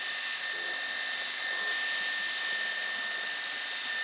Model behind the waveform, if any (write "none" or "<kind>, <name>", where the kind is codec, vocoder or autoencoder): none